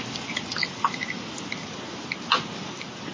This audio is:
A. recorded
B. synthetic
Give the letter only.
A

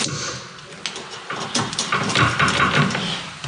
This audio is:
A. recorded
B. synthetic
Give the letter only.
A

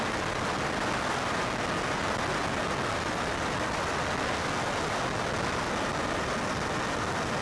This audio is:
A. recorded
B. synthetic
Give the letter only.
A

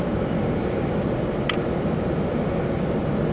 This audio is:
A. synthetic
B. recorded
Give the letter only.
B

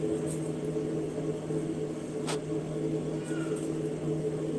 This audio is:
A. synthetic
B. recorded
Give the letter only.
B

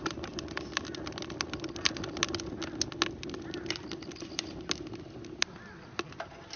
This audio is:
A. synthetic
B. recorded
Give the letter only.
B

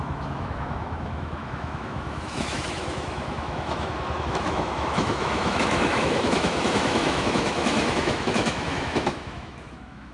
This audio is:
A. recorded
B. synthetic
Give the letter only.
B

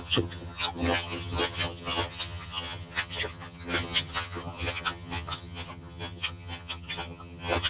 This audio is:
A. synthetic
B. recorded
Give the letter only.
A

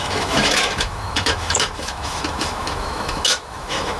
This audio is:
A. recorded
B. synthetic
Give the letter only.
B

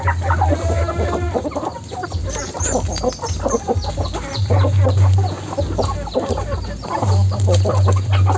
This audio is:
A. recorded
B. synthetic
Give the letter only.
A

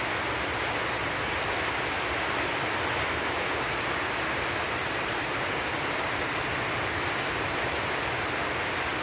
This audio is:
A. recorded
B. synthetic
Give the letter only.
A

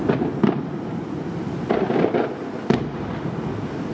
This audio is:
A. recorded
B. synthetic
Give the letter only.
A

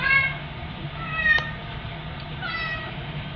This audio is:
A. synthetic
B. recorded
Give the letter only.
B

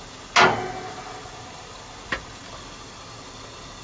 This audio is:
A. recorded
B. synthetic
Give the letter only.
A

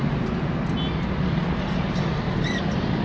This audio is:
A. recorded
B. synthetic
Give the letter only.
A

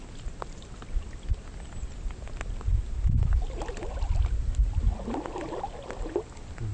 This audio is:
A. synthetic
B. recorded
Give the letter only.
B